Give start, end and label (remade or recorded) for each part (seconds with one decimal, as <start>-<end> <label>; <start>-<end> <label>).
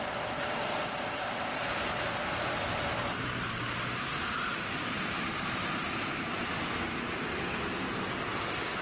0.0-6.5 remade; 6.5-8.8 recorded